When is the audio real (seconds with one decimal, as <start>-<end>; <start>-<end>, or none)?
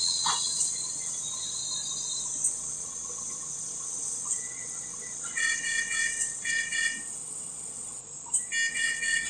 1.6-2.5; 8.0-8.7